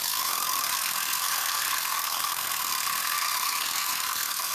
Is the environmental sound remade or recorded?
remade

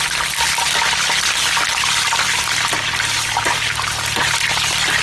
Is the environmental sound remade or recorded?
recorded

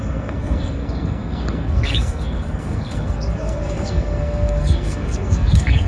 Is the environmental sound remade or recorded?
remade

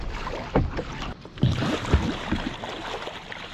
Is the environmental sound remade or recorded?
recorded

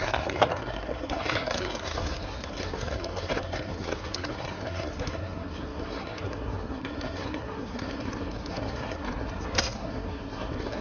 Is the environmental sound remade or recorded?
remade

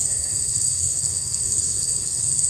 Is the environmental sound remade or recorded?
remade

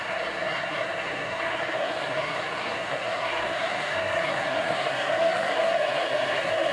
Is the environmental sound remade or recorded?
remade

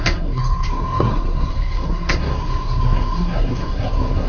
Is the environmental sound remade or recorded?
remade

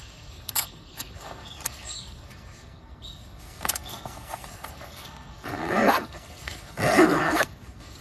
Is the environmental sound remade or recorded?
remade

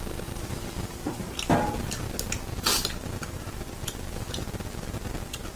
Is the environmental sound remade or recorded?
recorded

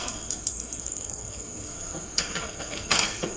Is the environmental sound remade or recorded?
remade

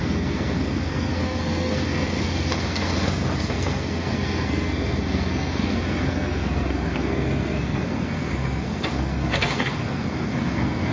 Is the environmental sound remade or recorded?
remade